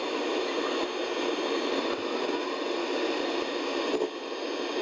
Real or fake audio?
real